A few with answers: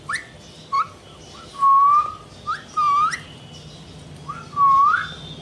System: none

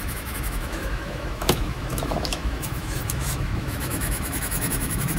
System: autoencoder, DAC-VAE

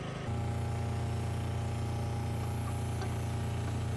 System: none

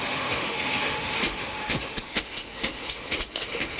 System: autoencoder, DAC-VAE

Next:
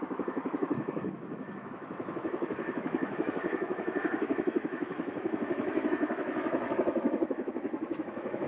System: autoencoder, DAC-VAE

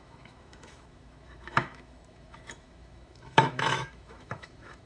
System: autoencoder, DAC-VAE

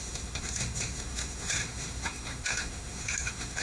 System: autoencoder, DAC-VAE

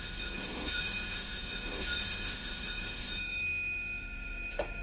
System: autoencoder, DAC-VAE